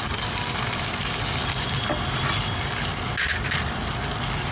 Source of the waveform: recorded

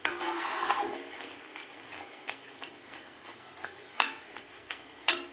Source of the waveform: remade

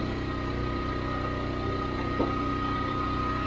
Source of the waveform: recorded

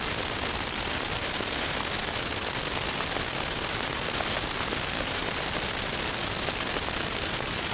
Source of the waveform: recorded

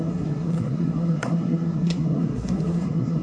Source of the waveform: remade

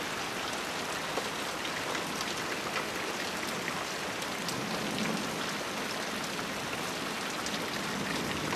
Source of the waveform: recorded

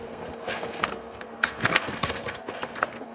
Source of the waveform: remade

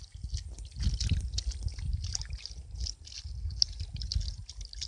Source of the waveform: recorded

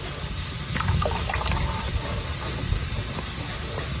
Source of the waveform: recorded